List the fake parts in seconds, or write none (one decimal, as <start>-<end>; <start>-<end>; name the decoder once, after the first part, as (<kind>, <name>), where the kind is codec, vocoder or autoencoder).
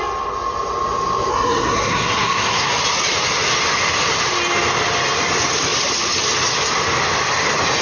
1.3-2.7 (codec, SNAC)